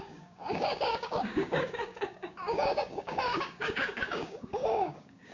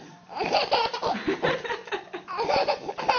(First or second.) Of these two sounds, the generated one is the first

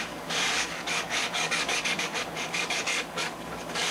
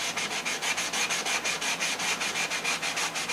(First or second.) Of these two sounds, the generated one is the first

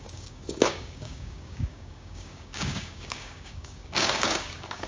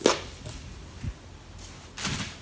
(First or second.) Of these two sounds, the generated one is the first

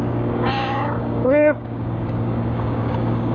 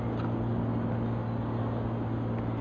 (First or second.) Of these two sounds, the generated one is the first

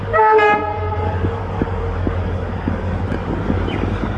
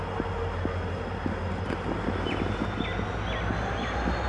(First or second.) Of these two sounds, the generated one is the first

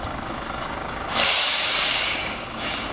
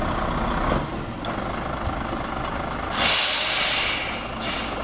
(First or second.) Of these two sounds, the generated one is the first